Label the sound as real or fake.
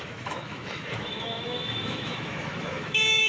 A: fake